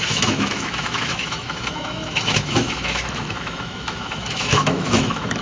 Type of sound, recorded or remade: remade